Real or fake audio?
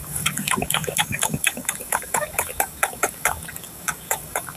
fake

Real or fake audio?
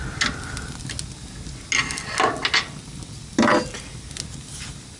real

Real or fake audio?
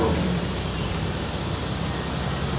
real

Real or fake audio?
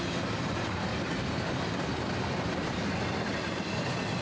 real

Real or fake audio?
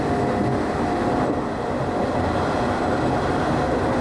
real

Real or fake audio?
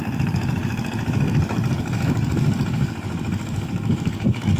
fake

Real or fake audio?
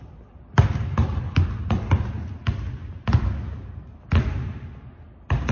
real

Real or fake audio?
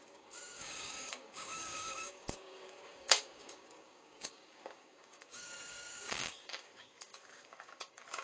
fake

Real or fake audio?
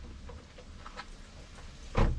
real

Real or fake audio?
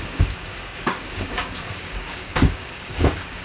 fake